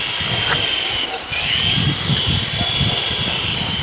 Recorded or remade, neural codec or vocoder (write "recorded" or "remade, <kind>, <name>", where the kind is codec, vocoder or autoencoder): recorded